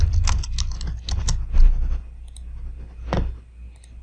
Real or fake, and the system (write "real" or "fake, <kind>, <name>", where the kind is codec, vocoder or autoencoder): real